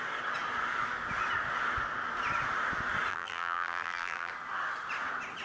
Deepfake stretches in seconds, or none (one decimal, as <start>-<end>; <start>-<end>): 3.1-4.3